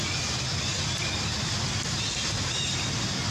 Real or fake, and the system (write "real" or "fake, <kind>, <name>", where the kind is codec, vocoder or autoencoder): real